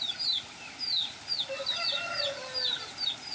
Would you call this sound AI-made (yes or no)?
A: no